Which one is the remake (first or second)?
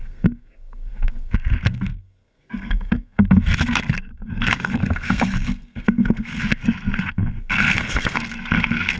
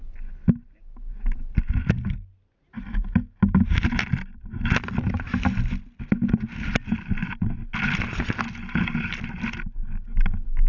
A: first